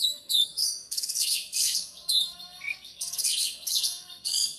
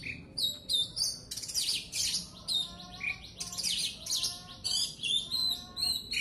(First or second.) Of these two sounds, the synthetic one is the first